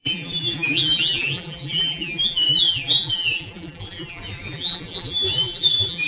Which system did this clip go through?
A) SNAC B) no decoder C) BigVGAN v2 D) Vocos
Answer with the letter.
C